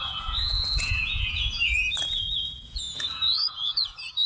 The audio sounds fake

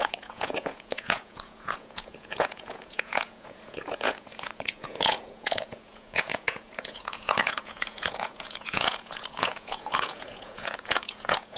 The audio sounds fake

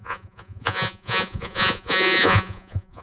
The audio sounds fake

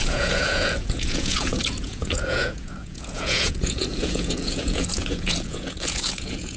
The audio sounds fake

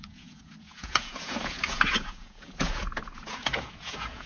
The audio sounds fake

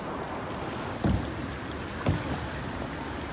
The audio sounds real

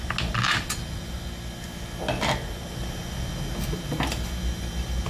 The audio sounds real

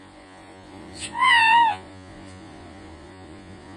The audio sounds fake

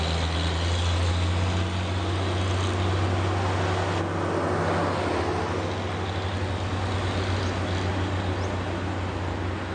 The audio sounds real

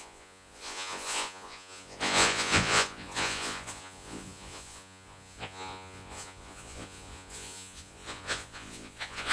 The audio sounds fake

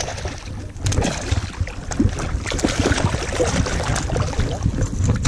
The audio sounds real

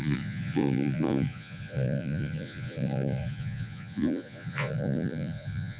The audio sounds fake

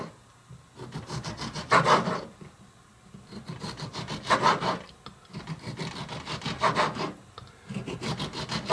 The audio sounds real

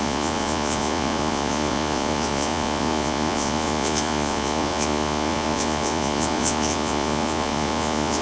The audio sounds fake